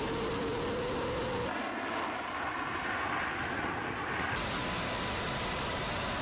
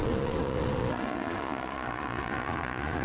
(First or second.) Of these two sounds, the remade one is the second